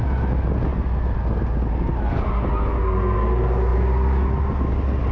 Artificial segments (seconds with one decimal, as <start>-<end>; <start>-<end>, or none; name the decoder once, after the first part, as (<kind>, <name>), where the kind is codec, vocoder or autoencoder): none